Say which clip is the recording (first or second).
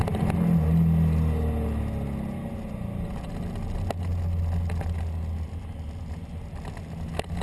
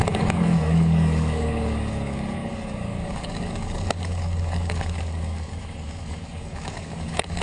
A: first